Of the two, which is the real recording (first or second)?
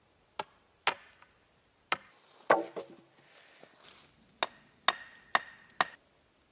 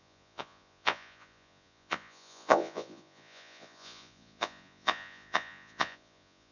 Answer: first